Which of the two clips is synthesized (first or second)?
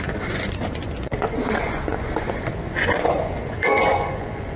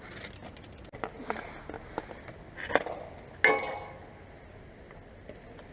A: first